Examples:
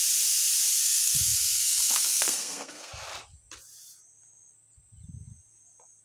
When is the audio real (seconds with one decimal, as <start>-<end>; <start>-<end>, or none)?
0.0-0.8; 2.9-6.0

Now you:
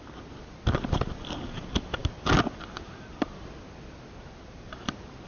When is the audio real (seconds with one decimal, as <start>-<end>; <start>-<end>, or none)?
0.0-5.3

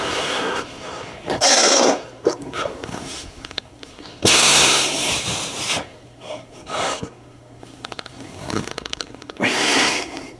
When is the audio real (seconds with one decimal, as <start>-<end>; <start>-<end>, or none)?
5.1-5.8